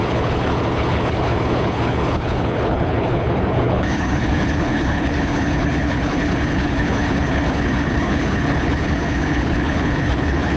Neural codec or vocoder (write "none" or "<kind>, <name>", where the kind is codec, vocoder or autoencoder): codec, HILCodec